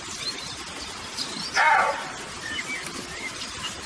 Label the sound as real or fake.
real